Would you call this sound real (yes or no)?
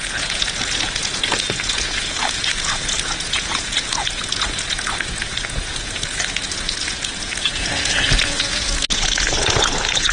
no